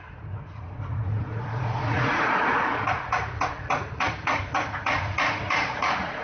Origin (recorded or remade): remade